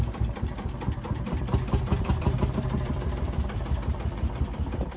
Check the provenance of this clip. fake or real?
fake